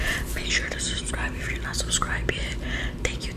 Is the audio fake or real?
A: fake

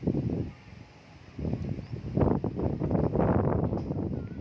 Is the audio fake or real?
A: real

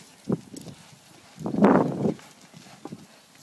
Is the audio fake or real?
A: real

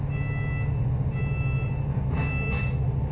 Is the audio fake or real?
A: real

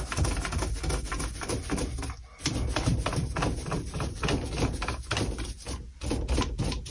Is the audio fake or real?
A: real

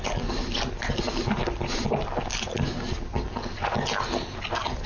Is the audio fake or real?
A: real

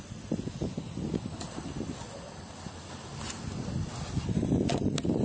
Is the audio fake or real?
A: real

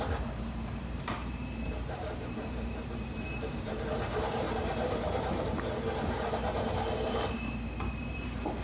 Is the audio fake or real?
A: fake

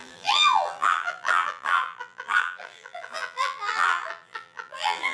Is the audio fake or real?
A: fake